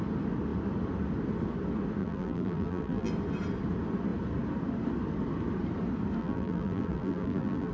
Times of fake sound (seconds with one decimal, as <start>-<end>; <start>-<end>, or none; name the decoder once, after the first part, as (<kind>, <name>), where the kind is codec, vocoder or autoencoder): 2.0-3.1 (vocoder, BigVGAN v2); 6.2-7.7